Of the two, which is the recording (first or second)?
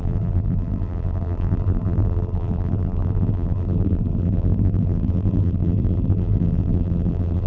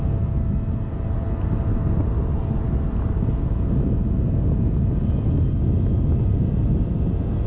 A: second